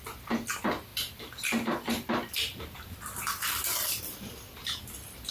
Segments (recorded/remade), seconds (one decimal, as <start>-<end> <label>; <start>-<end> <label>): 0.0-5.3 remade